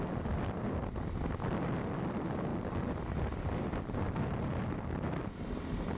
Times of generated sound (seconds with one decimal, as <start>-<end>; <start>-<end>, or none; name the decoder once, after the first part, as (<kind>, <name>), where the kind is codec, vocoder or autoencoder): none